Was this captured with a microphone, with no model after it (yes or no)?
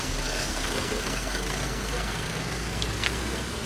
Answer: no